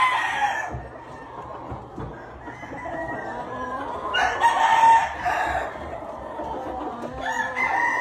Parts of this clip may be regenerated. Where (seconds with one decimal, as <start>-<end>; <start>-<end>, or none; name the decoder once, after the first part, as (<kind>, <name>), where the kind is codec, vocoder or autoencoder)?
5.6-6.2 (vocoder, BigVGAN v2)